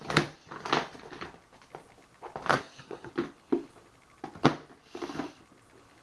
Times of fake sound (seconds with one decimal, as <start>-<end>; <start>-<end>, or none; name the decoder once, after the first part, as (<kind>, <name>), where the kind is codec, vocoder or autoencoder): 2.5-3.1 (codec, SNAC)